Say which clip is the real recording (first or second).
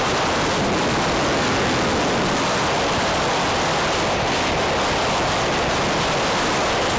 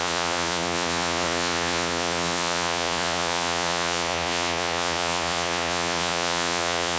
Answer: first